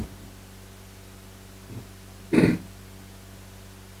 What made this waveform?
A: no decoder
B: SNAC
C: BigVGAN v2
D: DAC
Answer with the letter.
A